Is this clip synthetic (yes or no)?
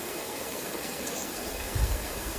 yes